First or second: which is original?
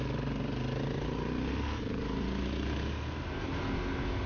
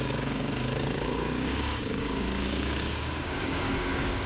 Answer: first